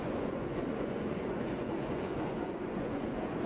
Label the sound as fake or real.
fake